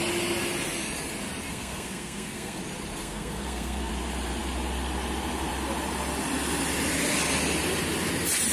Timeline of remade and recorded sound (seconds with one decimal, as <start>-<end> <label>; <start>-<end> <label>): 0.0-1.5 recorded; 1.5-2.6 remade; 2.6-3.0 recorded; 3.0-3.9 remade; 3.9-8.5 recorded